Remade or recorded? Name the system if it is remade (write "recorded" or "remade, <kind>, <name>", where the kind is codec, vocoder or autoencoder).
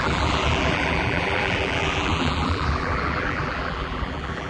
remade, vocoder, BigVGAN v2